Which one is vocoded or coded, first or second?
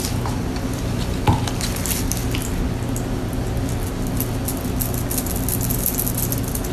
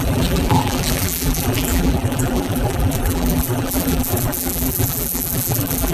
second